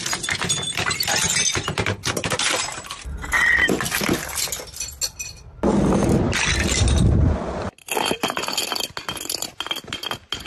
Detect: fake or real real